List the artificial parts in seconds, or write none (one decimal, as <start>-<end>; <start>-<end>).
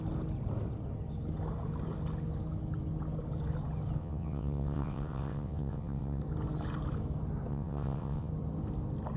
4.0-6.2; 7.5-8.3